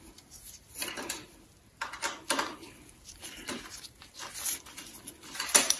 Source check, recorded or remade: recorded